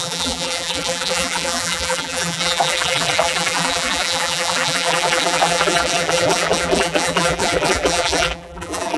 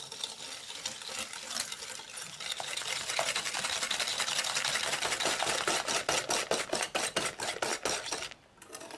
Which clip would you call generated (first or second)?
first